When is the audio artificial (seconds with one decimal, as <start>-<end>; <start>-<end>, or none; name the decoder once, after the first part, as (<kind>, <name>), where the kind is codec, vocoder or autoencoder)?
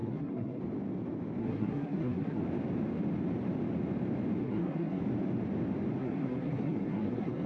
0.0-0.6 (codec, SNAC); 1.4-2.4; 4.4-5.0; 6.0-7.5